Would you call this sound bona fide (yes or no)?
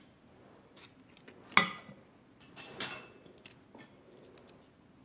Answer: yes